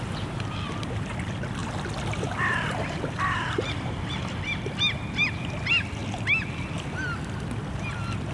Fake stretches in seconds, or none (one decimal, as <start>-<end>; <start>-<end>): none